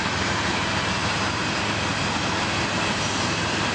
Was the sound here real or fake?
real